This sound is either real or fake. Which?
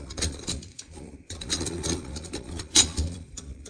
fake